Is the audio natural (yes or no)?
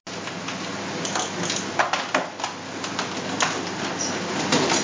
yes